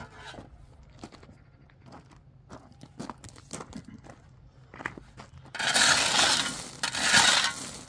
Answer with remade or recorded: recorded